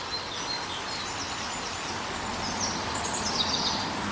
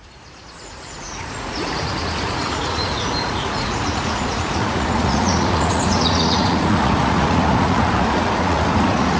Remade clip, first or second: second